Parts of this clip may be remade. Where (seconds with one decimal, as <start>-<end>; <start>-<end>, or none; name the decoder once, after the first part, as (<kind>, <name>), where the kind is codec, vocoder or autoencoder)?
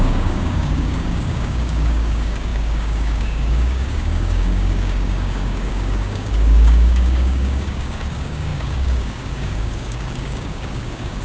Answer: 0.0-11.2 (codec, DAC)